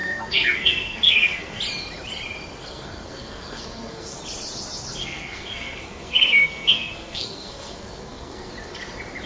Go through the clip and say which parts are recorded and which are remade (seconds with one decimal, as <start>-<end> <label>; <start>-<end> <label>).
0.0-1.6 remade; 1.6-2.6 recorded; 2.6-4.2 remade; 4.2-5.0 recorded; 5.0-8.5 remade; 8.5-9.3 recorded